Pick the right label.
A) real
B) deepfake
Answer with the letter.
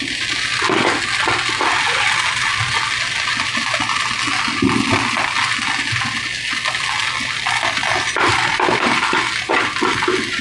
A